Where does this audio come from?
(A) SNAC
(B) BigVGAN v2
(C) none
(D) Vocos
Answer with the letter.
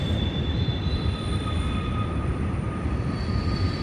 B